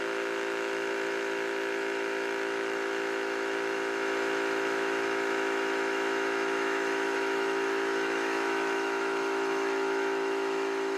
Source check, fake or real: fake